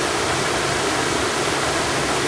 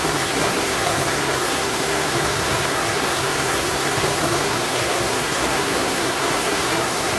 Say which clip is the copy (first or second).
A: second